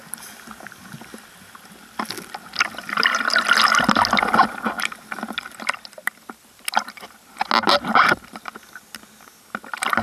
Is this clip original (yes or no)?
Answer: yes